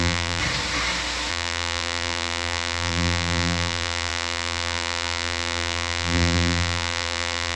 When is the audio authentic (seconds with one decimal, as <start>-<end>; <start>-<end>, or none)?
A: 0.4-1.3